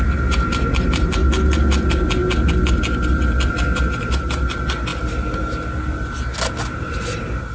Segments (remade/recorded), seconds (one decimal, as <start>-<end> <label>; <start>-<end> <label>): 0.0-7.5 recorded

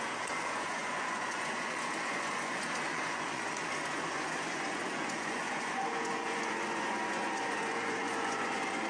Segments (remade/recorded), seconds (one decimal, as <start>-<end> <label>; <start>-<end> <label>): 0.0-8.9 remade